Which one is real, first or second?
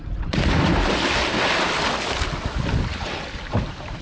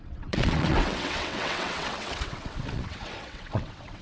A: first